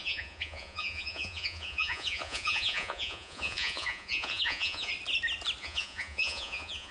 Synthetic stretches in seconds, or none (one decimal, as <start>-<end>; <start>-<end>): 0.0-4.9; 5.6-6.9